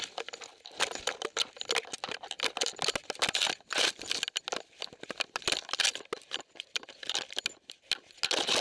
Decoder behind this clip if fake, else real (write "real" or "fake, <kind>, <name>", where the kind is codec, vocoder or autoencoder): real